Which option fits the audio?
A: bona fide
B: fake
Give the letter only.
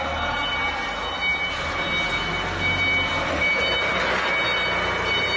A